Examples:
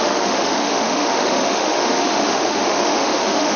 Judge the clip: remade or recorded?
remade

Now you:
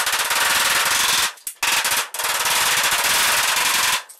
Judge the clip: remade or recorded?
recorded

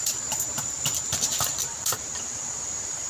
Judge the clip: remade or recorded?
remade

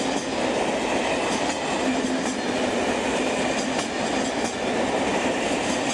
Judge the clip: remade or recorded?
recorded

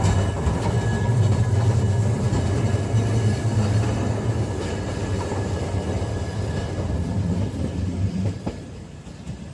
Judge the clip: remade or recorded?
recorded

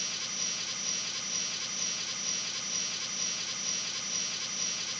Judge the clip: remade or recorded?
recorded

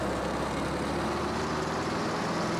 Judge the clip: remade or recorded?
recorded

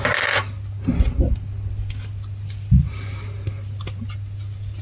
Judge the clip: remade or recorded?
recorded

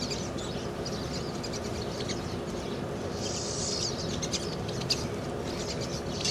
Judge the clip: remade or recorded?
recorded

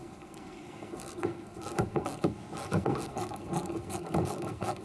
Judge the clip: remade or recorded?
remade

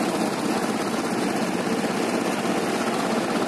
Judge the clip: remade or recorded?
recorded